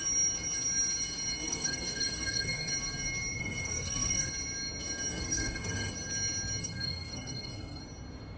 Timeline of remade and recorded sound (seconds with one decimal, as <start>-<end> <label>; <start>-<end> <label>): 0.0-1.4 recorded; 1.4-2.7 remade; 2.7-3.4 recorded; 3.4-4.3 remade; 4.3-5.1 recorded; 5.1-5.9 remade; 5.9-6.6 recorded; 6.6-7.8 remade; 7.8-8.4 recorded